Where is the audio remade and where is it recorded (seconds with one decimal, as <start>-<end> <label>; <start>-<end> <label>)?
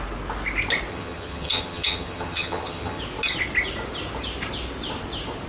0.0-0.9 recorded; 0.9-3.0 remade; 3.0-5.5 recorded